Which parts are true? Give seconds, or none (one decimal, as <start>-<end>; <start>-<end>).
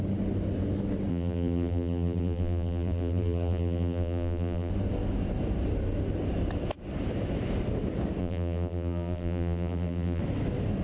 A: 0.0-1.1; 4.7-8.2; 10.2-10.8